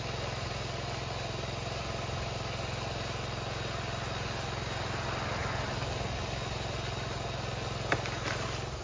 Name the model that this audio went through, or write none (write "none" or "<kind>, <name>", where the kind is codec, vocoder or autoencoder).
none